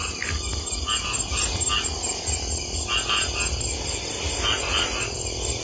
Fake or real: real